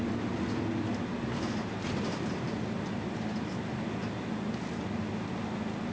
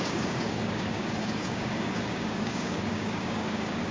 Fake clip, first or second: second